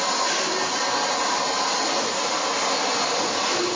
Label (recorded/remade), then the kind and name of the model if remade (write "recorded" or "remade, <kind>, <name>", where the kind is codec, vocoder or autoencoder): recorded